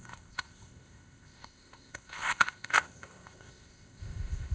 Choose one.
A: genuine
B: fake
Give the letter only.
B